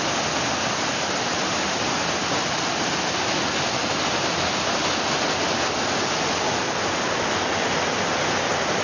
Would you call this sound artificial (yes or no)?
no